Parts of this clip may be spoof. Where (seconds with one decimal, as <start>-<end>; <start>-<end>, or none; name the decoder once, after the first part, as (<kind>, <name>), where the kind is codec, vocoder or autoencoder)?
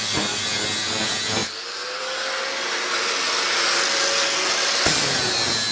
none